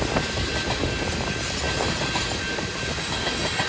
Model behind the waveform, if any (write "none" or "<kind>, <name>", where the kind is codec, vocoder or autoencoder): none